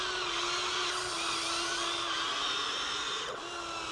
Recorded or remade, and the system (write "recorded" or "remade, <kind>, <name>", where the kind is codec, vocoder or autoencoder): recorded